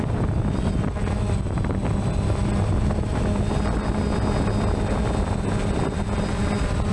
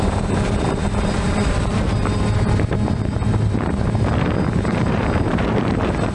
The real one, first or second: first